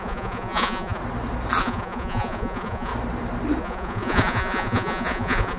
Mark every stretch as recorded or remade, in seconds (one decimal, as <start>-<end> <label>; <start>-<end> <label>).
0.0-1.0 remade; 1.0-1.6 recorded; 1.6-2.9 remade; 2.9-3.6 recorded; 3.6-5.6 remade